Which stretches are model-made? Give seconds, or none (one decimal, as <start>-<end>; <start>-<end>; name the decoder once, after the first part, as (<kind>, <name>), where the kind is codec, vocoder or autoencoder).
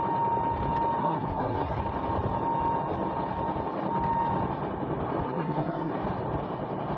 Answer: 1.0-1.8 (codec, SNAC); 5.2-5.9